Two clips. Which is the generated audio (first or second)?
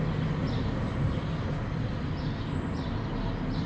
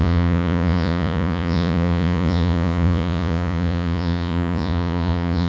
second